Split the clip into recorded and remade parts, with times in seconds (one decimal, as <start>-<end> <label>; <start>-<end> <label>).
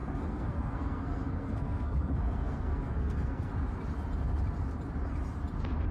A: 0.0-3.5 remade; 3.5-5.9 recorded